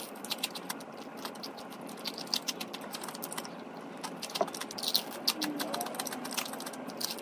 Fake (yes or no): no